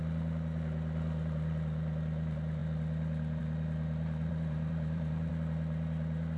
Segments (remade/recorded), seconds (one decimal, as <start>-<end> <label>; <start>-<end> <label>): 0.0-4.3 recorded; 4.3-5.3 remade; 5.3-6.4 recorded

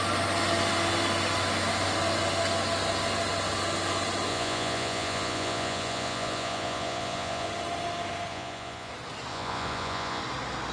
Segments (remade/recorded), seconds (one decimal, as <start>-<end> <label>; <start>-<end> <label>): 0.0-4.3 recorded; 4.3-7.5 remade; 7.5-8.3 recorded; 8.3-8.9 remade; 8.9-9.3 recorded; 9.3-10.2 remade; 10.2-10.7 recorded

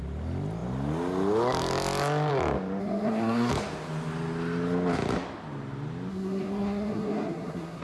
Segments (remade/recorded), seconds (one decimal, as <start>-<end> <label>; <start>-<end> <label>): 0.0-2.8 recorded; 2.8-3.5 remade; 3.5-6.1 recorded; 6.1-7.8 remade

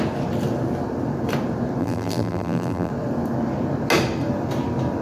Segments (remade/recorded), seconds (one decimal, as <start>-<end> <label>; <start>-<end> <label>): 0.0-1.8 recorded; 1.8-2.9 remade; 2.9-5.0 recorded

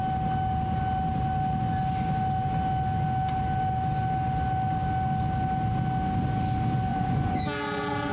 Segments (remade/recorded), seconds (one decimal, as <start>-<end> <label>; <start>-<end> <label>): 0.0-6.9 recorded; 6.9-7.4 remade; 7.4-8.1 recorded

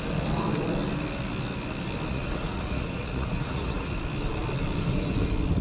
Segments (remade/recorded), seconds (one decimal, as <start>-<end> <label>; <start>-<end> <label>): 0.0-2.1 recorded; 2.1-3.9 remade; 3.9-5.6 recorded

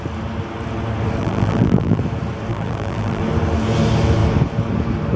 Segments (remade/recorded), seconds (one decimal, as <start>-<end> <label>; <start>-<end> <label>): 0.0-1.2 recorded; 1.2-2.0 remade; 2.0-2.5 recorded; 2.5-3.2 remade; 3.2-5.2 recorded